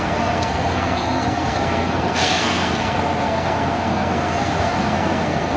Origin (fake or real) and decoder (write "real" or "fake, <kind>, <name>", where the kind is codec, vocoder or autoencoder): fake, codec, SNAC